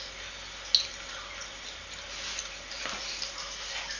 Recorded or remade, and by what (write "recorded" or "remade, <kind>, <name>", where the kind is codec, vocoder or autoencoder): recorded